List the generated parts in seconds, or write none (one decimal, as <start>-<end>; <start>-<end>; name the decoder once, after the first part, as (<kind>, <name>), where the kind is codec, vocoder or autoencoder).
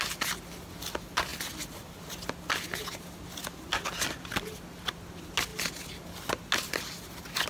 none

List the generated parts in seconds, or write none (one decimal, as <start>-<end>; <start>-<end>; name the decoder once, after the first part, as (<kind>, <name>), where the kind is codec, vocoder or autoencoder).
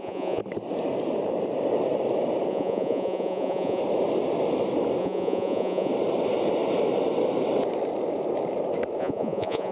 0.0-0.4 (vocoder, Vocos); 2.5-3.8; 5.0-5.9; 9.0-9.7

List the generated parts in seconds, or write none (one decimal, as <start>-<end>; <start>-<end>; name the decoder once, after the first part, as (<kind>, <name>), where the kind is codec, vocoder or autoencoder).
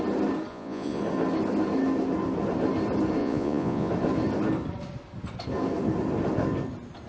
0.5-1.0 (vocoder, Vocos); 3.2-3.9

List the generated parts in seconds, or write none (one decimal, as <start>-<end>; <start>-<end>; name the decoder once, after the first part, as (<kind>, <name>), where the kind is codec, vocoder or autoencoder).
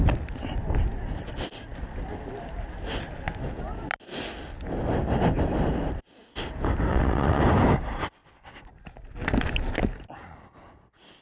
6.9-7.4 (vocoder, WaveNeXt)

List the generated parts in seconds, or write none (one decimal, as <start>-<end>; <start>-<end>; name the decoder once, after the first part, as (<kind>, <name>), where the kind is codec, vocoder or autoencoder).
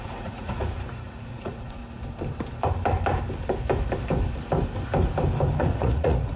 0.0-1.8 (vocoder, Vocos); 5.6-6.4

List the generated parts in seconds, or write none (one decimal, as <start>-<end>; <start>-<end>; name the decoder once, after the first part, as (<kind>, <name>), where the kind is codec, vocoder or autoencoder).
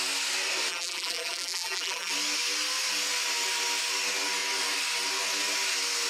0.7-2.1 (vocoder, BigVGAN v2)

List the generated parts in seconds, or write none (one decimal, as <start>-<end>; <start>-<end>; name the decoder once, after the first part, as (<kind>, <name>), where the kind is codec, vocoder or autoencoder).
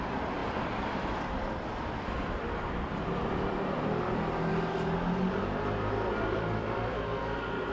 0.4-4.5 (vocoder, BigVGAN v2); 6.1-6.8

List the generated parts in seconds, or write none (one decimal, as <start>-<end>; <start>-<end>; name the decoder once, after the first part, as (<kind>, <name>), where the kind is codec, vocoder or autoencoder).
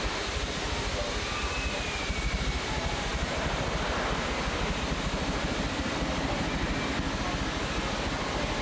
none